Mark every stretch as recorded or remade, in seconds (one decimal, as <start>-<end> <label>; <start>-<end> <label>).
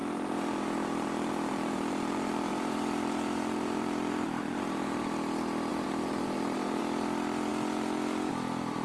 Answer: 0.0-5.1 remade; 5.1-5.7 recorded; 5.7-6.8 remade; 6.8-8.8 recorded